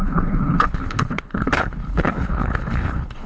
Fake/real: fake